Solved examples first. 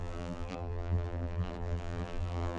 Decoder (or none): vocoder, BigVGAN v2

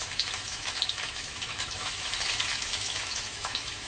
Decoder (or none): autoencoder, DAC-VAE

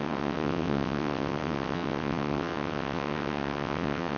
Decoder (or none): vocoder, WaveNeXt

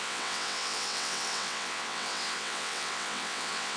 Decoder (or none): vocoder, WaveNeXt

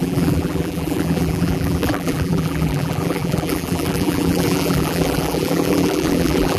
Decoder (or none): vocoder, BigVGAN v2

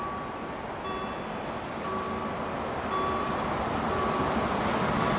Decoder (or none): none